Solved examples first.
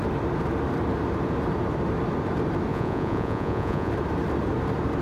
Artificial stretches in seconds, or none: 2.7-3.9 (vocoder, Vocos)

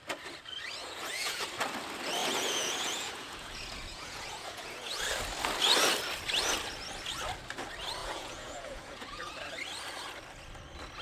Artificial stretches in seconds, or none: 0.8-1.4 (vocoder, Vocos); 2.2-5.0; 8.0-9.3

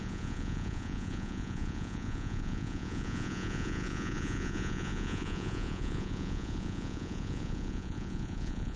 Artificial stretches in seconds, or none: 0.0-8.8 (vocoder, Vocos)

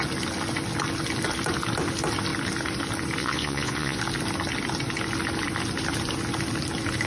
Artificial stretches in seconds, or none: 3.2-4.0 (vocoder, Vocos)

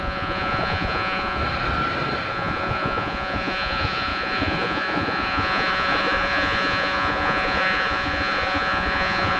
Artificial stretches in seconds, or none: 0.0-1.4 (vocoder, Vocos); 2.3-9.4

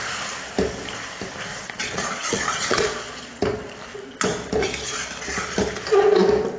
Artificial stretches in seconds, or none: 1.5-3.4 (vocoder, Vocos)

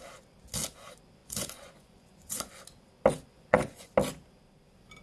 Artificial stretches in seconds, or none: 1.2-2.6 (vocoder, Vocos); 3.3-3.9